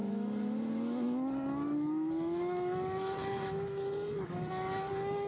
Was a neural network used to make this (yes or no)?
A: yes